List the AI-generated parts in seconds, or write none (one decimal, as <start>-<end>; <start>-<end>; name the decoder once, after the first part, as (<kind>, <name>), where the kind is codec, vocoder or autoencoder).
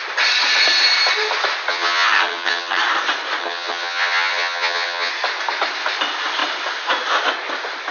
1.7-2.8 (vocoder, HiFi-GAN); 3.4-5.1